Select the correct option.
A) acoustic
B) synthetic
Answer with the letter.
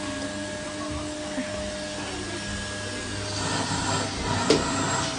A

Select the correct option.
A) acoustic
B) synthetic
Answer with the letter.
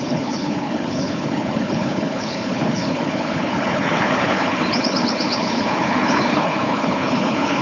B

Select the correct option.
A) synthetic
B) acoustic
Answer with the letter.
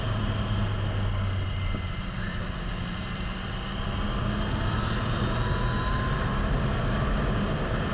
B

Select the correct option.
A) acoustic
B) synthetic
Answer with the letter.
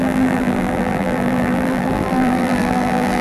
B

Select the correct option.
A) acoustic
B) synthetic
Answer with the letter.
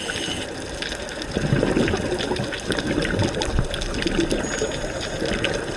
A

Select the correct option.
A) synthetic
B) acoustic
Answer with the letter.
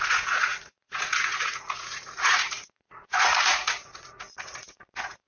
A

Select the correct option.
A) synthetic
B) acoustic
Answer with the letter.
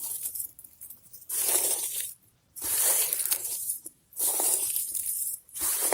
A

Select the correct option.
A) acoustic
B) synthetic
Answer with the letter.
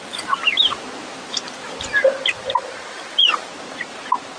A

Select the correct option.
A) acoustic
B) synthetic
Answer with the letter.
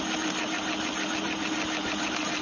A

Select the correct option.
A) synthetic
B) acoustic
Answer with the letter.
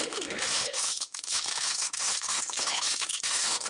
A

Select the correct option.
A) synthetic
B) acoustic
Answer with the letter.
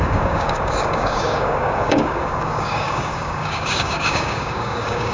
A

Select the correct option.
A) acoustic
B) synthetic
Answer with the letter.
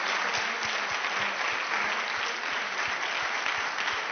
A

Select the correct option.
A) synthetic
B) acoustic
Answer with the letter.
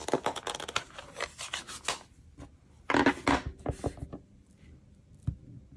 B